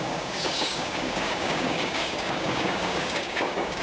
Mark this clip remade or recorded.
remade